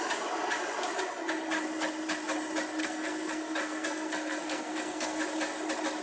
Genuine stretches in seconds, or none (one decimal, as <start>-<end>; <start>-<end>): 0.0-2.8; 5.2-6.0